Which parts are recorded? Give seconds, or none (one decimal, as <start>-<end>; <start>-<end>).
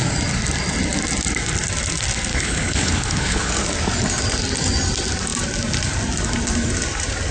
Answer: 0.0-2.3; 3.5-7.3